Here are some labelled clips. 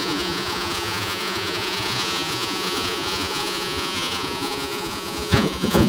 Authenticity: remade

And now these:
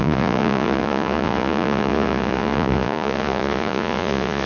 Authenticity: remade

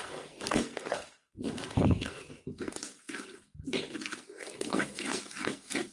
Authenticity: remade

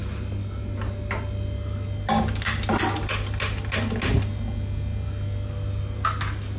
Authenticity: recorded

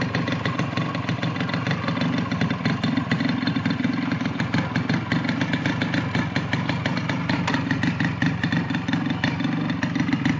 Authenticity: recorded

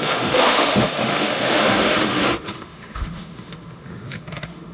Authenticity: remade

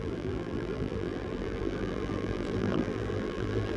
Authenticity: remade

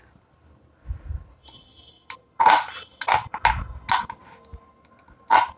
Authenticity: recorded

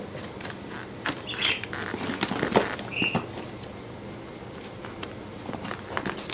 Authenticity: recorded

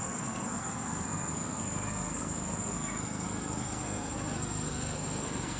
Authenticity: remade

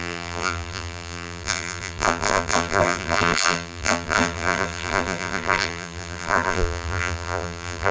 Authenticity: remade